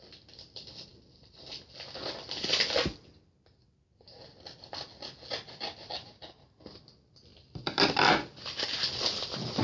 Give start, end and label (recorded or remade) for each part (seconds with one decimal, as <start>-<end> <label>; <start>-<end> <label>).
0.0-9.6 recorded